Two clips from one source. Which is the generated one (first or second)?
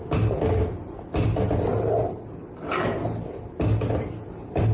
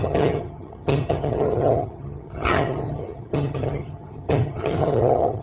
second